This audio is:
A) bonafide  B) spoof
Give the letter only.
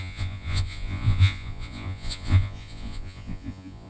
B